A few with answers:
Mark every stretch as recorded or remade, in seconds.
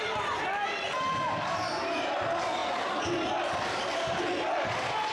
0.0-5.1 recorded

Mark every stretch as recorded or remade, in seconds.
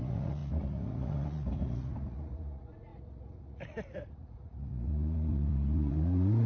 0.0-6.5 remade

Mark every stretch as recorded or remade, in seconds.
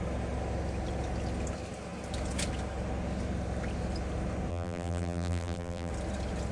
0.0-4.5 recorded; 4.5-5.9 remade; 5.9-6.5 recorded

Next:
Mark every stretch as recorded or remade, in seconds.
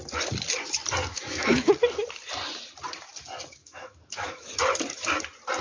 0.0-1.1 recorded; 1.1-1.7 remade; 1.7-3.6 recorded; 3.6-4.5 remade; 4.5-5.6 recorded